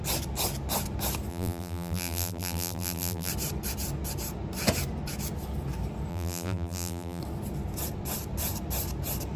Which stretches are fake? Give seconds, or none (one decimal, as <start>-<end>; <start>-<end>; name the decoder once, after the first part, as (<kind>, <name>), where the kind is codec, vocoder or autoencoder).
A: 1.3-3.3 (vocoder, BigVGAN v2); 6.1-7.2